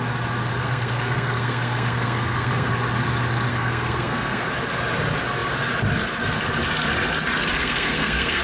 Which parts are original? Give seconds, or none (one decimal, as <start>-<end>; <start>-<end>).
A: 0.0-0.6; 2.7-3.5; 4.5-7.6